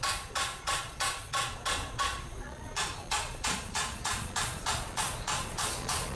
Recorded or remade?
remade